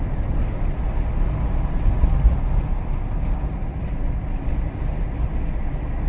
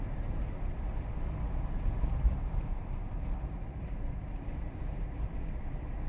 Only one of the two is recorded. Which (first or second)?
first